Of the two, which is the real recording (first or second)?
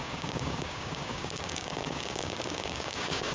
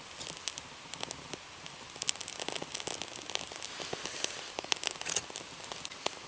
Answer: second